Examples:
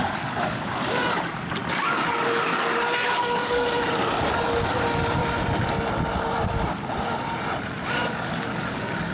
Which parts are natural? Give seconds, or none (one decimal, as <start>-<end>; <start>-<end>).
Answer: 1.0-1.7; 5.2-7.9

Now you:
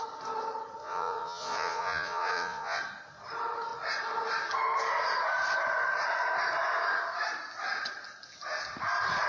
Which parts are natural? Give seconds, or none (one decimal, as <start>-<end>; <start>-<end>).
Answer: 0.0-0.8; 2.8-9.3

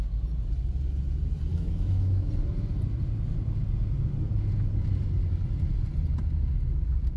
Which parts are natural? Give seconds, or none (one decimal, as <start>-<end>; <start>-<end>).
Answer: 0.0-1.5; 2.3-7.2

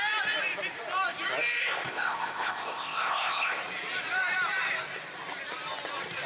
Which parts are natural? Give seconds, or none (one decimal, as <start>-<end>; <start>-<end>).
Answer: 0.0-1.6; 3.6-6.3